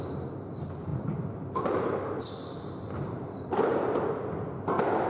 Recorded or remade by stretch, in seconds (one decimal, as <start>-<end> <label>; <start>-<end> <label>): 0.0-0.9 recorded; 0.9-4.0 remade; 4.0-5.1 recorded